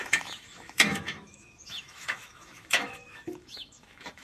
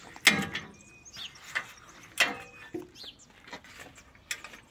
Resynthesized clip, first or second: first